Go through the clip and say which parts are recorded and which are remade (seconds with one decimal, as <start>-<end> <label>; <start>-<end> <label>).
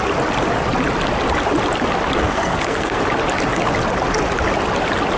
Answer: 0.0-2.2 recorded; 2.2-3.0 remade; 3.0-5.2 recorded